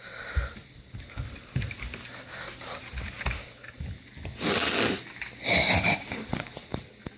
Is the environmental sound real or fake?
real